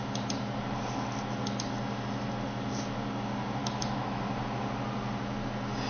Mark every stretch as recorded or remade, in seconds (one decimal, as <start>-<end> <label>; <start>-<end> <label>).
0.0-3.6 recorded; 3.6-4.2 remade; 4.2-5.9 recorded